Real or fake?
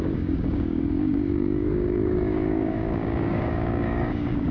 fake